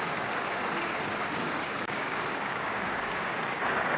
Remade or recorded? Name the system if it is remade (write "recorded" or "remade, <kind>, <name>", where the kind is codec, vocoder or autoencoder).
remade, codec, DAC